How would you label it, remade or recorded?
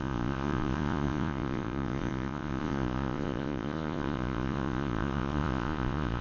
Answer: remade